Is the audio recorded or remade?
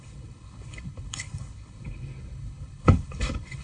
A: remade